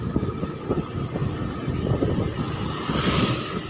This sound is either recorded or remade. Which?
recorded